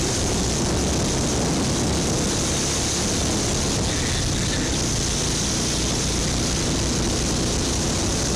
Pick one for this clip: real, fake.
real